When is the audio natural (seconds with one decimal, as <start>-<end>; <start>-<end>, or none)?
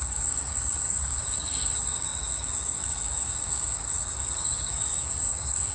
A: none